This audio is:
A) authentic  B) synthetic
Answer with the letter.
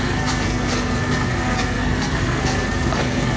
B